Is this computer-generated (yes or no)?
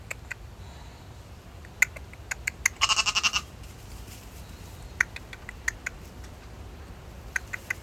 no